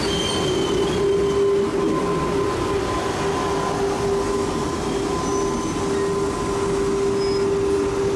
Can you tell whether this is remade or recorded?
recorded